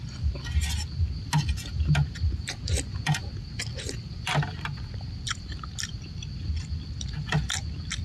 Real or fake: real